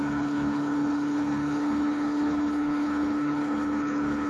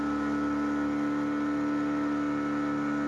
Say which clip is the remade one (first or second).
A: first